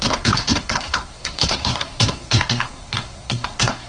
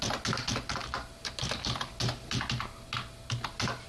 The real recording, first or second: second